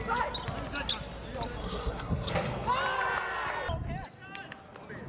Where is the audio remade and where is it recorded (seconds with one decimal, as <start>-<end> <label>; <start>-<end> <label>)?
0.0-1.6 recorded; 1.6-2.3 remade; 2.3-5.1 recorded